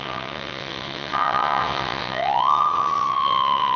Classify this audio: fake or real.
fake